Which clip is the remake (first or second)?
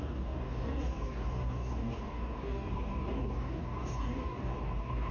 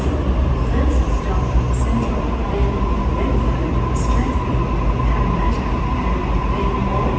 first